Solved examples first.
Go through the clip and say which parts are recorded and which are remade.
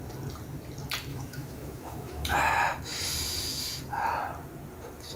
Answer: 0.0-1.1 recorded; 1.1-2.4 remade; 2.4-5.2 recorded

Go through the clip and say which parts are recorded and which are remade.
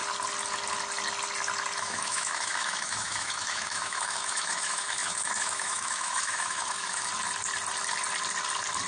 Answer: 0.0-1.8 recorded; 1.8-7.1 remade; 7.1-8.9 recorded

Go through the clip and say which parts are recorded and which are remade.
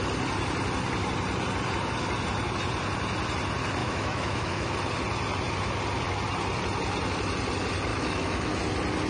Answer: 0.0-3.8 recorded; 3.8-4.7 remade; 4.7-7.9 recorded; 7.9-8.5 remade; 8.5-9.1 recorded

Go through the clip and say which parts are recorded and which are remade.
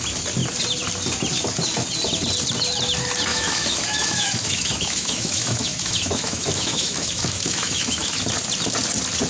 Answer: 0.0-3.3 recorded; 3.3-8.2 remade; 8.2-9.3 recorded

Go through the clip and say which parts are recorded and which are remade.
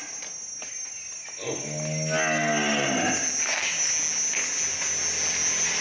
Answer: 0.0-5.8 recorded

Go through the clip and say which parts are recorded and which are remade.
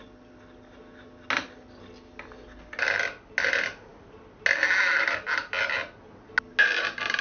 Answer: 0.0-7.2 recorded